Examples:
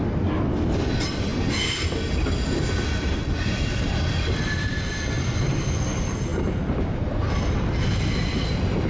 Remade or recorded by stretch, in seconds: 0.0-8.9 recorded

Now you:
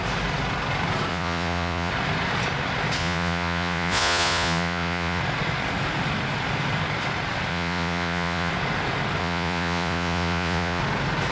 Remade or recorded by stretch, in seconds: 0.0-1.1 recorded; 1.1-1.9 remade; 1.9-3.0 recorded; 3.0-5.2 remade; 5.2-7.5 recorded; 7.5-8.5 remade; 8.5-9.2 recorded; 9.2-10.8 remade; 10.8-11.3 recorded

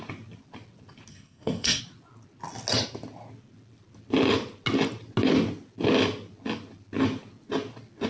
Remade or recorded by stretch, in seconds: 0.0-1.1 recorded; 1.1-1.8 remade; 1.8-8.1 recorded

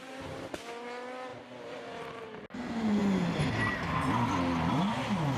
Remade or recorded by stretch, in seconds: 0.0-5.4 recorded

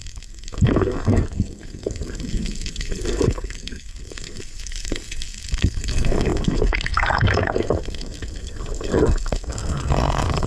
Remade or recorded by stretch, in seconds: 0.0-10.5 remade